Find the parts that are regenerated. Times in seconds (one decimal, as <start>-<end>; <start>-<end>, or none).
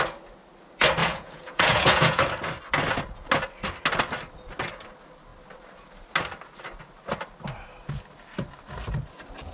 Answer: 1.0-2.2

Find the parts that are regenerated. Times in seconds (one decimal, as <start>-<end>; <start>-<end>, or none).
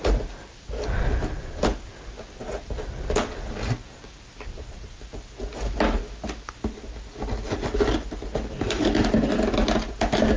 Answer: none